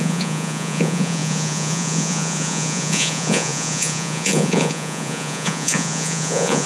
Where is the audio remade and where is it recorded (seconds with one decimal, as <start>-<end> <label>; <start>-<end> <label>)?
0.0-6.7 remade